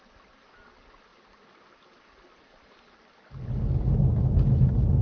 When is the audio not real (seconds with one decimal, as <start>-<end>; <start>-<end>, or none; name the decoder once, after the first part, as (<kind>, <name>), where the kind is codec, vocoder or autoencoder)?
none